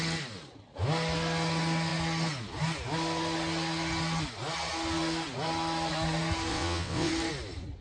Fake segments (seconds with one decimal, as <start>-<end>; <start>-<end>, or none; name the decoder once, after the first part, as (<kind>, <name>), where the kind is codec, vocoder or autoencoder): 6.5-7.1 (vocoder, WaveNeXt)